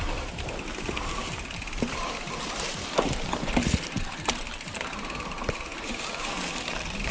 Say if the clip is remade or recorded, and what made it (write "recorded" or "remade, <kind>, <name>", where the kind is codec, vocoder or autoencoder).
recorded